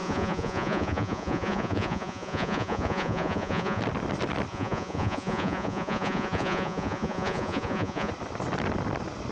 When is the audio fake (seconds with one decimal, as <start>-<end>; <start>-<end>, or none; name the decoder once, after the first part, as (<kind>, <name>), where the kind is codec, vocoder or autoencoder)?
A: 0.0-3.8 (vocoder, Vocos); 4.5-8.1